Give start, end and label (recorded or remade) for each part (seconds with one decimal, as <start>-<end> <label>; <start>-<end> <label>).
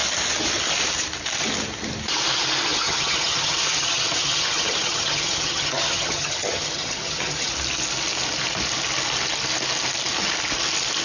0.0-2.7 recorded; 2.7-7.5 remade; 7.5-11.0 recorded